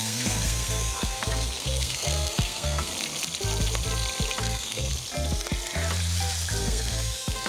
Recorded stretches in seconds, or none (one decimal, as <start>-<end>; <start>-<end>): 2.9-4.4; 4.9-6.6